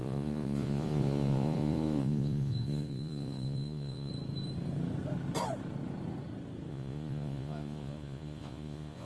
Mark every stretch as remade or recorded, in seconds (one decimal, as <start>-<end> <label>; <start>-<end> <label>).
0.0-4.1 remade; 4.1-6.7 recorded; 6.7-9.1 remade